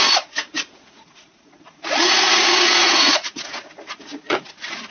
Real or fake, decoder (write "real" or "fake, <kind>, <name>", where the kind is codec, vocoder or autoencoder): fake, vocoder, Vocos